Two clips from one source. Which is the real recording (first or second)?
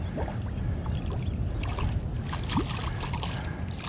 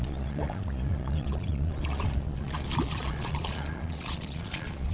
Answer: first